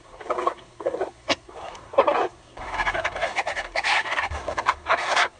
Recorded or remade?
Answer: remade